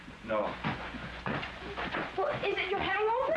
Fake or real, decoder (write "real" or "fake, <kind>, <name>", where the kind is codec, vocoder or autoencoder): fake, vocoder, Vocos